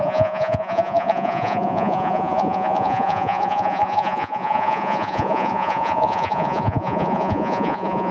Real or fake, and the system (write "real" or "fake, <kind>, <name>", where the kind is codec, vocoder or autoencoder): fake, vocoder, Vocos